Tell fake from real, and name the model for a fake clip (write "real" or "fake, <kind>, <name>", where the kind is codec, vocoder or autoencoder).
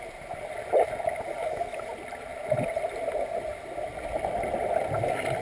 real